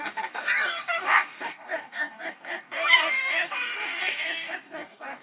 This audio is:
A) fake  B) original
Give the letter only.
A